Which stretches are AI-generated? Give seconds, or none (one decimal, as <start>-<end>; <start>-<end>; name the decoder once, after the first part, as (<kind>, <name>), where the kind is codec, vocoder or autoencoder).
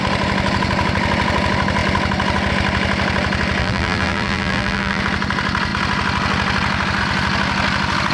3.6-5.0 (vocoder, BigVGAN v2)